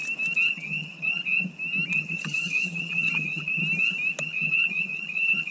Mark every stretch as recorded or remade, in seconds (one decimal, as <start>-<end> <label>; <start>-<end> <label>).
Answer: 0.0-0.5 recorded; 0.5-1.2 remade; 1.2-2.0 recorded; 2.0-3.6 remade; 3.6-4.2 recorded; 4.2-5.5 remade